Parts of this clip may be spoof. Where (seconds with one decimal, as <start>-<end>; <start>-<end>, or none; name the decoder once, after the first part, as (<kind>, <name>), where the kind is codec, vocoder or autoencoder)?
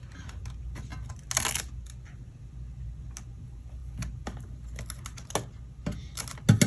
none